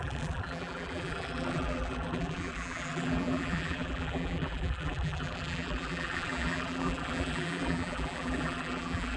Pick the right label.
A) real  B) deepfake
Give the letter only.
B